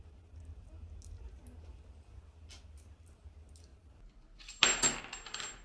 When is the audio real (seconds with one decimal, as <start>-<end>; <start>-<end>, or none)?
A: 0.0-5.6